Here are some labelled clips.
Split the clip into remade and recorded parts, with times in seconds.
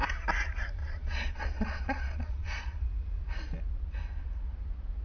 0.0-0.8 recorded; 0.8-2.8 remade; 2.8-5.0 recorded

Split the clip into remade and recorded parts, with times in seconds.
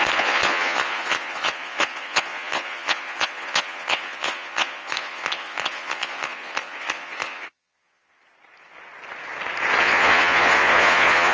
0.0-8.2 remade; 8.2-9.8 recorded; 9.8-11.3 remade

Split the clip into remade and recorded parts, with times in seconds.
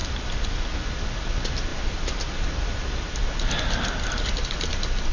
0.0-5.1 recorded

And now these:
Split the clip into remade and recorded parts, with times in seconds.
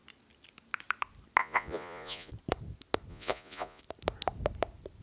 0.0-1.4 recorded; 1.4-2.3 remade; 2.3-3.1 recorded; 3.1-3.8 remade; 3.8-5.0 recorded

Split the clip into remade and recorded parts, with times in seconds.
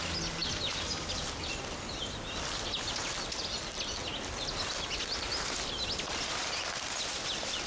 0.0-7.7 recorded